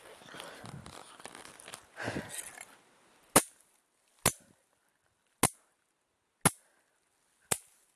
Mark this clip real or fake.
real